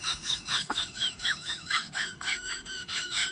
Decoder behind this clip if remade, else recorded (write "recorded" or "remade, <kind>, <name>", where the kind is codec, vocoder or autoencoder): remade, autoencoder, DAC-VAE